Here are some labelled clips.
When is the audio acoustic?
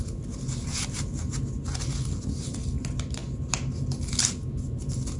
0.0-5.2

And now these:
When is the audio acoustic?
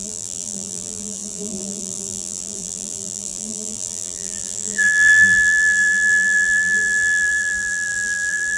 none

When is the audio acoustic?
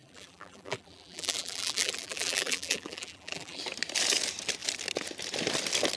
3.6-6.0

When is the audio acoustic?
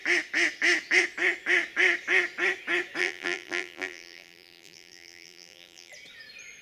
0.0-3.0; 5.9-6.6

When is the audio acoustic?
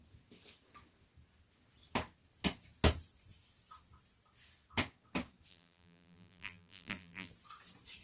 0.0-5.5; 7.3-8.0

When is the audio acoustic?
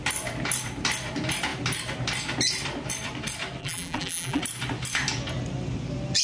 0.0-3.6; 4.4-6.2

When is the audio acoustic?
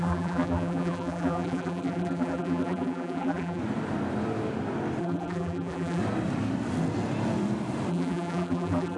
3.6-5.0; 6.0-7.9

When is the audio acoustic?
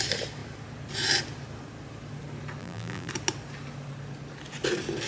0.0-2.6; 3.1-5.1